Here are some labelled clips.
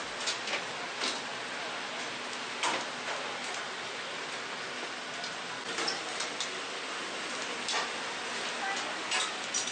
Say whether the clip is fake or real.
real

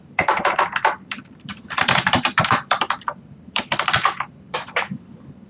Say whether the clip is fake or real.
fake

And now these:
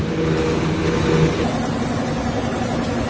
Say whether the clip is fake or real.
real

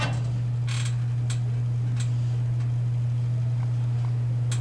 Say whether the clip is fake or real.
real